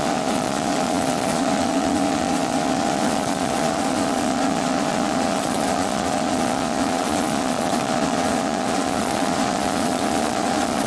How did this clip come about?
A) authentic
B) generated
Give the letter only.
B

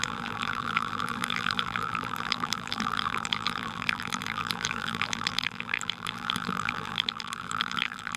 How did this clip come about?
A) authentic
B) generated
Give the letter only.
B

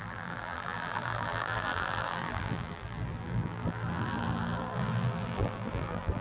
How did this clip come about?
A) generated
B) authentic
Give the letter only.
A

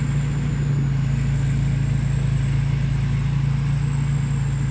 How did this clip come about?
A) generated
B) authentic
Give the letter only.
B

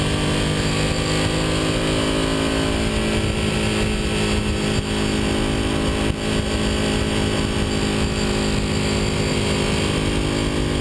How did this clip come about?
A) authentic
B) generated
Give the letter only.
A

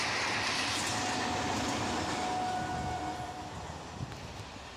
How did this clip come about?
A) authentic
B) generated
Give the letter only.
A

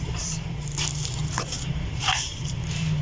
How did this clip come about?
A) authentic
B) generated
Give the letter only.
B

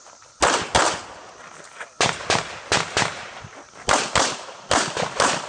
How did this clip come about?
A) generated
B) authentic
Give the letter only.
B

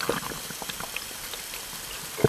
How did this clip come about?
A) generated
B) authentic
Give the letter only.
B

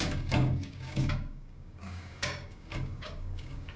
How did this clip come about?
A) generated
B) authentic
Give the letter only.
A